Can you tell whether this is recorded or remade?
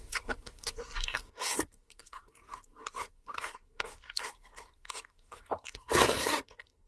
remade